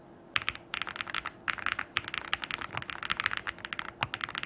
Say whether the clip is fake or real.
real